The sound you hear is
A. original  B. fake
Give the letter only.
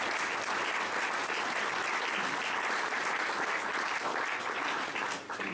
A